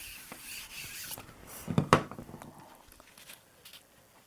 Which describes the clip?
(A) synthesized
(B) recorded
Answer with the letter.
B